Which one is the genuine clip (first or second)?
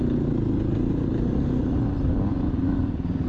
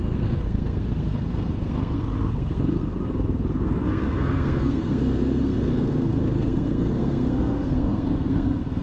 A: first